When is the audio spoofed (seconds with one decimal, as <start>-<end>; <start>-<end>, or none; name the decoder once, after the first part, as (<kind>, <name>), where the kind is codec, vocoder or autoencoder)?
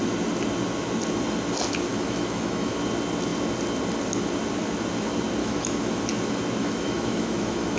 1.9-2.7 (autoencoder, DAC-VAE); 5.4-6.1; 6.6-7.8